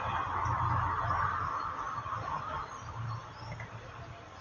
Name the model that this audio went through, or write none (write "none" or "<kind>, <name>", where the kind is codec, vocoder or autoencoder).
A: none